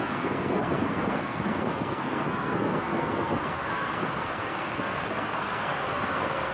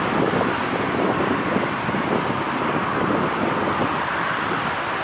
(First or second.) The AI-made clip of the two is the first